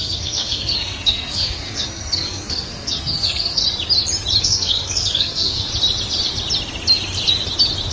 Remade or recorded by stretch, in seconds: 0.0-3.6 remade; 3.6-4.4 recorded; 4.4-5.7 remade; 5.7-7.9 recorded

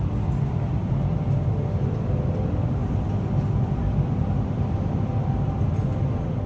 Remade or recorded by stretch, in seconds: 0.0-6.5 recorded

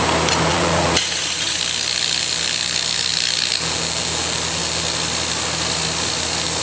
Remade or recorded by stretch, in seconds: 0.0-0.5 recorded; 0.5-1.6 remade; 1.6-6.6 recorded

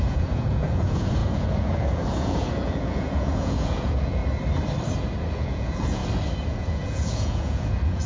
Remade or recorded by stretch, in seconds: 0.0-4.2 remade; 4.2-5.3 recorded; 5.3-6.0 remade; 6.0-6.5 recorded; 6.5-8.1 remade

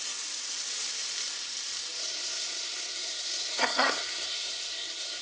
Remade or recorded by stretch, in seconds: 0.0-2.0 recorded; 2.0-5.2 remade

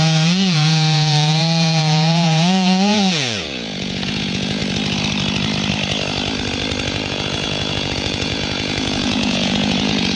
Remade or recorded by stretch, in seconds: 0.0-4.6 remade; 4.6-6.9 recorded; 6.9-10.2 remade

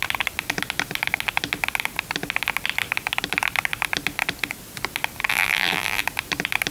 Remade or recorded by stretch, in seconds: 0.0-5.3 recorded; 5.3-6.0 remade; 6.0-6.7 recorded